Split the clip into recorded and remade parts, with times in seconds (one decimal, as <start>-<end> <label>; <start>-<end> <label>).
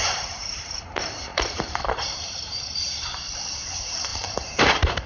0.0-5.1 remade